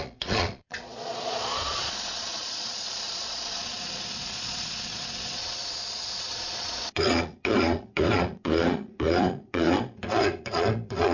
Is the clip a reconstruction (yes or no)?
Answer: yes